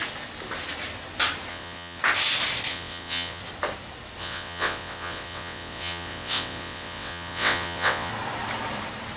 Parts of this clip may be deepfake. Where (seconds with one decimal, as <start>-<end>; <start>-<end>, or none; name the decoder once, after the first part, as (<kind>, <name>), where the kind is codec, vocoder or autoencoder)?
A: 1.5-2.0 (vocoder, WaveNeXt); 2.7-3.4; 4.2-8.1

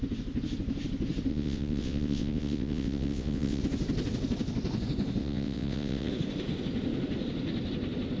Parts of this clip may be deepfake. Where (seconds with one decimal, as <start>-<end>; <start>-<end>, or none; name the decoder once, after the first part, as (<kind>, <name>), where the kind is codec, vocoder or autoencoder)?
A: 1.3-3.6 (vocoder, WaveNeXt); 5.2-6.1

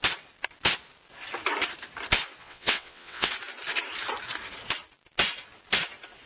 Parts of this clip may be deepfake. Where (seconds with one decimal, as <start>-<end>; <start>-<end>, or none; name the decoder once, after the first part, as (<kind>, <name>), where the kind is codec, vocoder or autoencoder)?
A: 2.4-3.3 (vocoder, WaveNeXt)